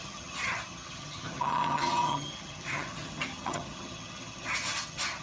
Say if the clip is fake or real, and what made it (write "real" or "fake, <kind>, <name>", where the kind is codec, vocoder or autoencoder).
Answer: fake, vocoder, HiFi-GAN